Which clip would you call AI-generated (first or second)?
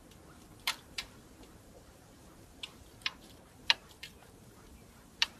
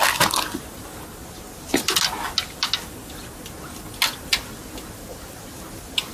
first